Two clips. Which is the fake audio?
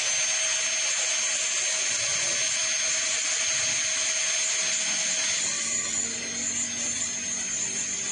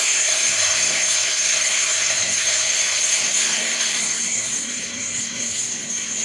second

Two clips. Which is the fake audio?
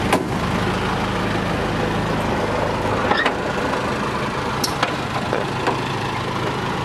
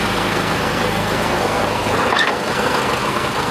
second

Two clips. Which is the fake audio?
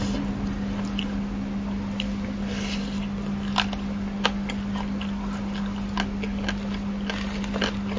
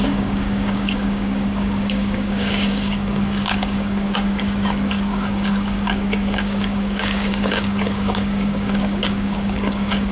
second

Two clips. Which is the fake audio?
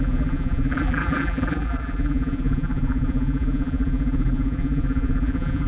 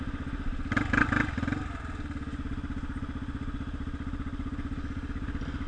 first